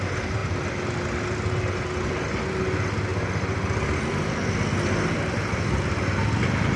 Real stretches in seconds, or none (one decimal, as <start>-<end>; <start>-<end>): 0.0-6.8